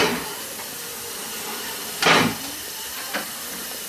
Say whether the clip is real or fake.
real